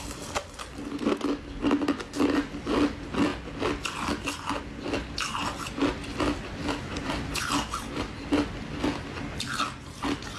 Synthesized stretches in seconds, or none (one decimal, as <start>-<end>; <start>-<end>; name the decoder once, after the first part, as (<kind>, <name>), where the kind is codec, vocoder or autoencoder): none